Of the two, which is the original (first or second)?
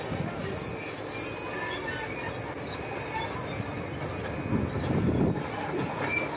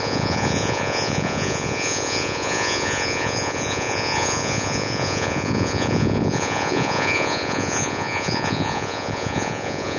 first